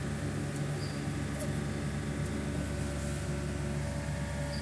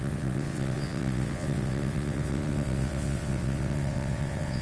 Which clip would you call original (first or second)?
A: first